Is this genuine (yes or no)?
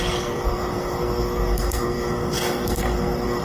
no